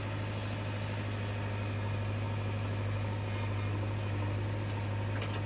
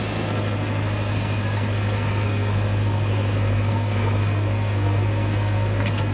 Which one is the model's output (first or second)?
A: second